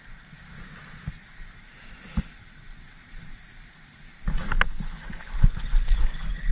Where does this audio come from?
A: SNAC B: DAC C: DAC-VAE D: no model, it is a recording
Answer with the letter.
D